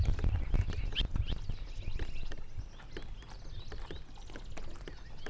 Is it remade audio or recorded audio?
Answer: recorded